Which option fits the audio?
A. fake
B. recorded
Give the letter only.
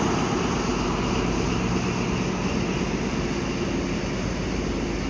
B